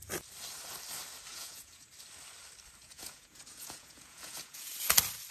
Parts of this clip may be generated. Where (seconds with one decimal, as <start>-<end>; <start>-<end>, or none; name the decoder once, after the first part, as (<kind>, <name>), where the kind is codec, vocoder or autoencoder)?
1.3-1.9 (vocoder, Vocos); 2.8-4.7